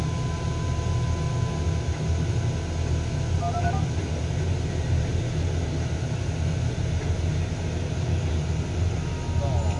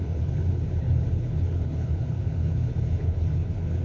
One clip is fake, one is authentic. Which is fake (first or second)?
second